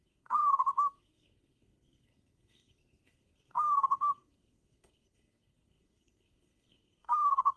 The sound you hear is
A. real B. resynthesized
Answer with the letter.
B